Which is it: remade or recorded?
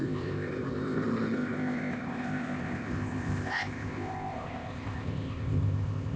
remade